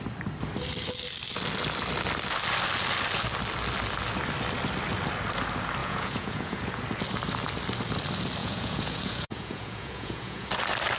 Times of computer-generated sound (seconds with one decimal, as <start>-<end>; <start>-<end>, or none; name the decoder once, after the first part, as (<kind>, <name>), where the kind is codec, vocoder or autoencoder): 5.8-6.8 (vocoder, Vocos); 8.4-10.5